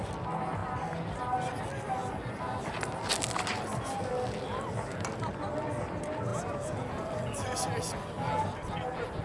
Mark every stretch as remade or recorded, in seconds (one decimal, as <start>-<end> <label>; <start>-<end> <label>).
0.0-9.2 recorded